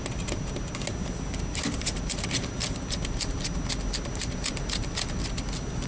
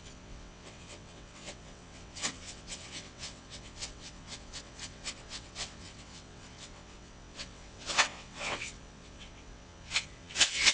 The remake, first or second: second